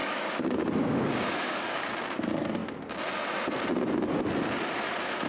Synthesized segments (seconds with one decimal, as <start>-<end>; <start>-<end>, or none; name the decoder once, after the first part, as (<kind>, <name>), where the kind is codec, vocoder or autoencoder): 0.0-1.9 (codec, DAC)